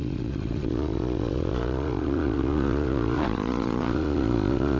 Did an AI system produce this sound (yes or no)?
yes